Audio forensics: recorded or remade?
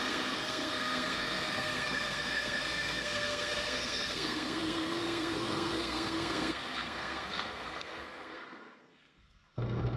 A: remade